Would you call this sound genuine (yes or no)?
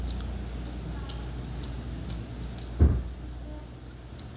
yes